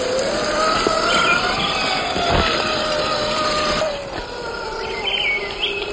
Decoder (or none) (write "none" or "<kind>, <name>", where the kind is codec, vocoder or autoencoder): none